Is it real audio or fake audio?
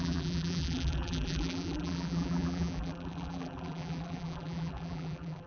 fake